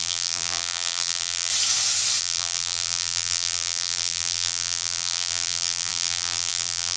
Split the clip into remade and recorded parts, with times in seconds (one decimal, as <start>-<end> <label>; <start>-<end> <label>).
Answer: 0.0-1.5 remade; 1.5-2.2 recorded; 2.2-7.0 remade